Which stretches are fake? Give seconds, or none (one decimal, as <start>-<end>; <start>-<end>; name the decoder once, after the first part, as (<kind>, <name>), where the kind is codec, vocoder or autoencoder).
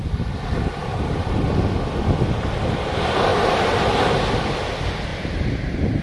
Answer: 0.8-1.4 (vocoder, BigVGAN v2); 3.3-4.3